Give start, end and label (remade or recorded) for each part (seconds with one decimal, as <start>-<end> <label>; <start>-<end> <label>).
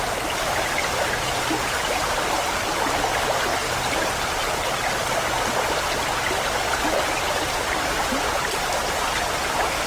0.0-3.5 recorded; 3.5-5.7 remade; 5.7-9.9 recorded